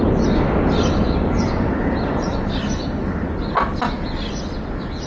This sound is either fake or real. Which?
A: real